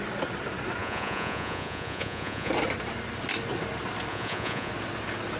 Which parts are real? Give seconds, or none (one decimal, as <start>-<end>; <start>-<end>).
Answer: 0.0-0.8; 2.5-4.1; 4.7-5.4